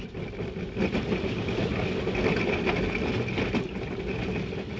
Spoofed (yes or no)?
no